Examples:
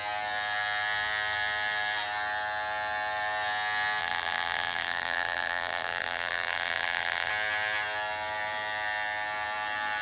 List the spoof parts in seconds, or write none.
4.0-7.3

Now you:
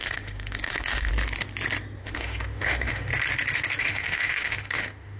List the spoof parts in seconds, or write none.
0.0-1.1; 2.0-3.1; 3.8-5.2

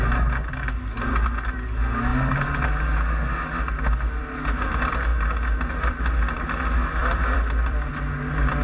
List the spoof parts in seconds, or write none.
7.0-7.9